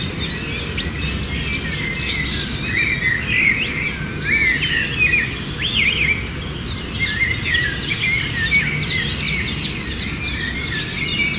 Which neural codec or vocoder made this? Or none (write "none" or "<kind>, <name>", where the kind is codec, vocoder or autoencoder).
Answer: none